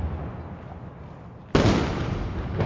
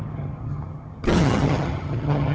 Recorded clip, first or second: first